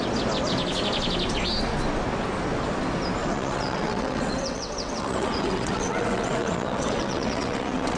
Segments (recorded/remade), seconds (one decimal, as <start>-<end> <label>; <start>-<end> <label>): 0.0-3.2 recorded; 3.2-8.0 remade